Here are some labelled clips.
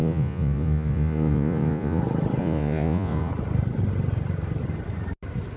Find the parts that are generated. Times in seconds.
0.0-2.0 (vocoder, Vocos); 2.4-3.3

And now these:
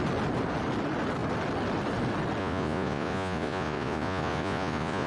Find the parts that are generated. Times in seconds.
2.4-5.1 (vocoder, Vocos)

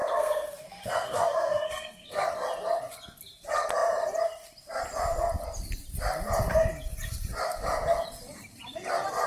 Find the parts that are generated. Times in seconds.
0.0-2.3 (codec, SNAC)

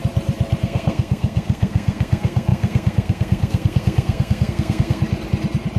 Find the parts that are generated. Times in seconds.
0.6-5.0 (codec, SNAC)

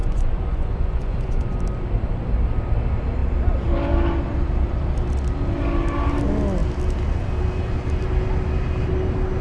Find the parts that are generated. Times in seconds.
0.0-1.6 (vocoder, Vocos)